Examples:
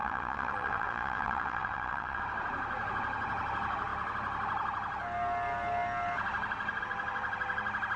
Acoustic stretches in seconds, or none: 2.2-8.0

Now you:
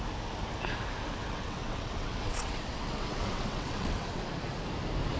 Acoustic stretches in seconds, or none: 0.0-1.1; 4.2-5.2

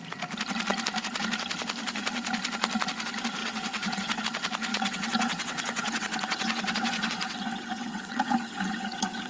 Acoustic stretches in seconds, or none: 0.0-3.4; 4.2-4.7

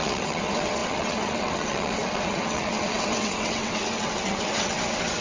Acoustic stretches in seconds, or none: none

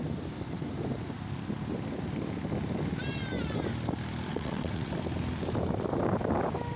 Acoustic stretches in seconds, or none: 0.0-4.3; 4.9-6.8

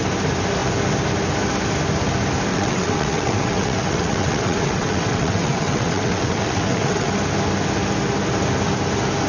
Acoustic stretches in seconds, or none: 0.0-2.5; 7.1-9.3

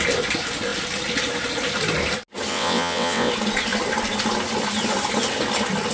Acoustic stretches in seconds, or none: 0.0-2.5; 3.3-5.9